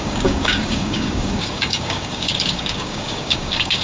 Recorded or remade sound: remade